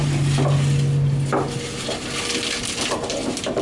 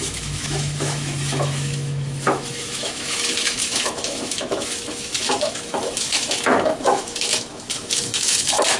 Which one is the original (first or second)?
first